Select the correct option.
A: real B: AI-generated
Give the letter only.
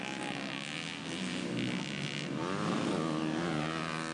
A